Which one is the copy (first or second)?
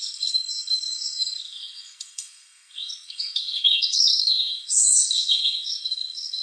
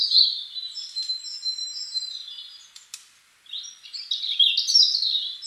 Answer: first